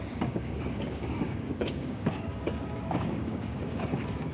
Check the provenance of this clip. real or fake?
fake